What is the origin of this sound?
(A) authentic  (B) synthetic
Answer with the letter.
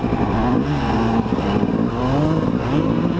A